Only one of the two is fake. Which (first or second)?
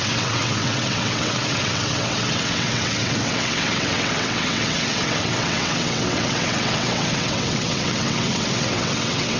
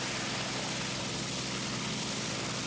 first